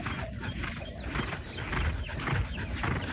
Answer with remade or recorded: recorded